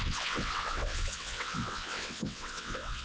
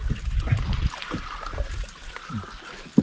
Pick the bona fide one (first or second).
second